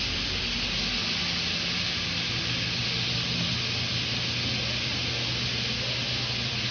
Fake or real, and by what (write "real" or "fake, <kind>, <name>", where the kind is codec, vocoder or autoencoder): real